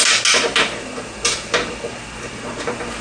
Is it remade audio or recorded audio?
recorded